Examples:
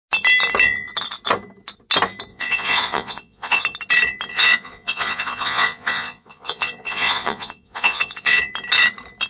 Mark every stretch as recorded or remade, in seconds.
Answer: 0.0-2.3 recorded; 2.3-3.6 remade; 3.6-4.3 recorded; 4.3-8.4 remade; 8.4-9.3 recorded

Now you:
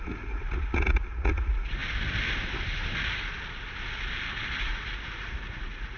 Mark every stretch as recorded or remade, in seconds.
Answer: 0.0-1.8 remade; 1.8-4.6 recorded; 4.6-6.0 remade

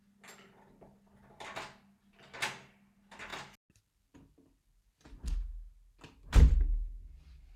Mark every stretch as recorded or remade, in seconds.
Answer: 0.0-7.6 recorded

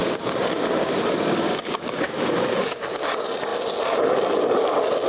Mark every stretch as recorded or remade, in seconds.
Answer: 0.0-3.1 remade; 3.1-5.1 recorded

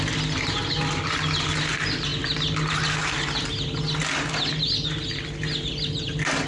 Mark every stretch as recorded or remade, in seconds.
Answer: 0.0-6.5 recorded

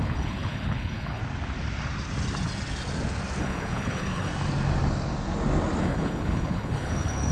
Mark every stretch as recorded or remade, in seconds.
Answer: 0.0-1.2 remade; 1.2-3.4 recorded; 3.4-4.3 remade; 4.3-5.8 recorded; 5.8-7.3 remade

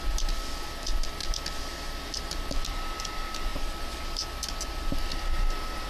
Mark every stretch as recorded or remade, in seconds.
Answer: 0.0-5.9 recorded